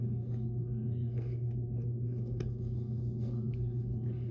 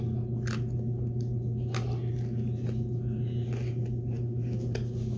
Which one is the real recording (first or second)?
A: second